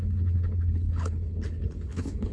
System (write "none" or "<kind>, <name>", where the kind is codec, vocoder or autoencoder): codec, HILCodec